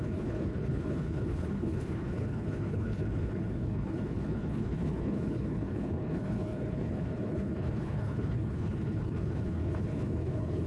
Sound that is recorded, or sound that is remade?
remade